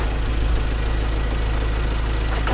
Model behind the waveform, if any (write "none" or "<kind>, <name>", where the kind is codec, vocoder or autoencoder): none